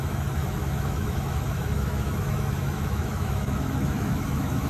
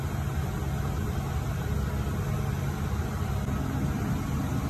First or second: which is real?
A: second